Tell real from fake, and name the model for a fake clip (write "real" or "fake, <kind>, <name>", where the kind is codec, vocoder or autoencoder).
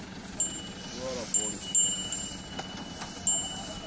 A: real